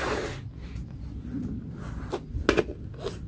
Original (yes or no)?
yes